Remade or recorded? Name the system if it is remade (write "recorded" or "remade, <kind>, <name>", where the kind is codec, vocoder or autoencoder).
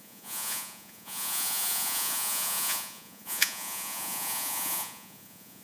remade, vocoder, Vocos